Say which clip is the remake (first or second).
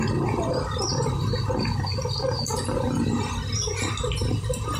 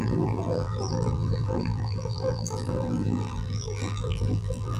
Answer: second